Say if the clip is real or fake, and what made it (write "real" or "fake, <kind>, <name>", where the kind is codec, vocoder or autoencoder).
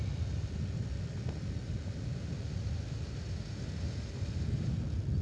real